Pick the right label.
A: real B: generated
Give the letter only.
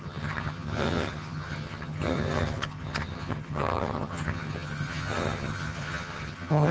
B